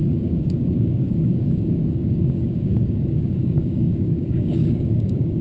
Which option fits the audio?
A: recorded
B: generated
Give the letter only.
B